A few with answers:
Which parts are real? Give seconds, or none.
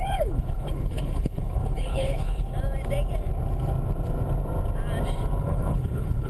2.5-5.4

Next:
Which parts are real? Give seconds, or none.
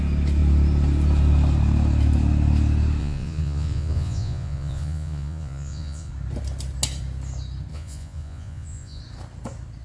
0.0-3.0; 6.1-7.7; 9.0-9.8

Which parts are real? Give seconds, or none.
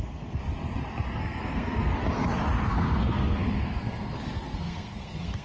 0.4-1.2; 2.0-2.7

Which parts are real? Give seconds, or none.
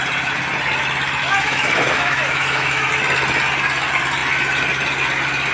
0.0-1.2; 2.9-5.5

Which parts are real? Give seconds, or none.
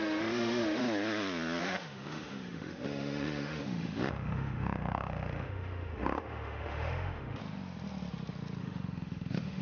0.8-1.6; 7.4-8.6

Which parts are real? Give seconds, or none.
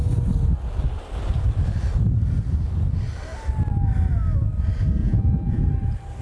0.0-5.0; 5.6-6.2